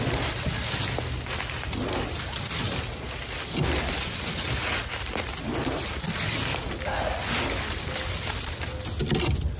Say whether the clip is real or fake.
real